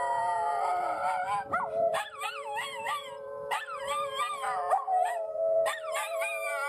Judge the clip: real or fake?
fake